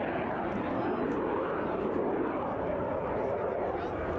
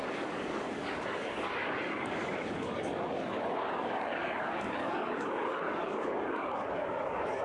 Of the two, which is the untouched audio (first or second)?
first